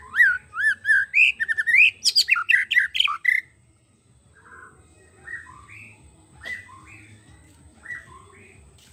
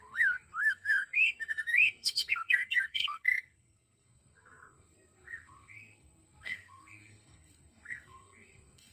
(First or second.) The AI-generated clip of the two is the second